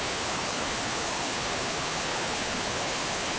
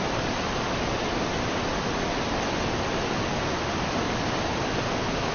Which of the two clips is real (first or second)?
second